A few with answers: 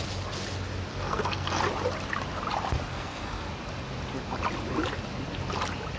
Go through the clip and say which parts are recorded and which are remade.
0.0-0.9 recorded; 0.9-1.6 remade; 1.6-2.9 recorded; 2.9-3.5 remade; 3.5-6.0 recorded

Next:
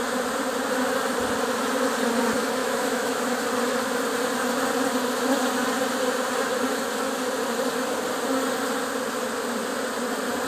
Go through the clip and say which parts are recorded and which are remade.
0.0-2.6 recorded; 2.6-3.2 remade; 3.2-10.5 recorded

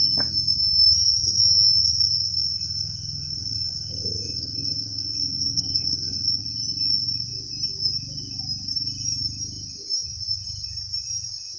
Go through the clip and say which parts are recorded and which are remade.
0.0-0.8 recorded; 0.8-1.4 remade; 1.4-1.8 recorded; 1.8-6.4 remade; 6.4-11.6 recorded

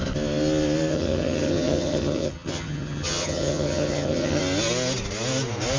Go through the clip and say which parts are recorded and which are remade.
0.0-0.9 recorded; 0.9-4.4 remade; 4.4-5.8 recorded

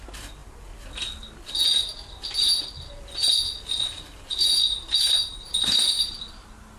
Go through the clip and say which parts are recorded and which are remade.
0.0-6.8 recorded

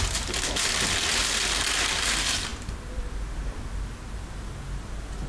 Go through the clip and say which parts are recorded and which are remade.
0.0-5.3 recorded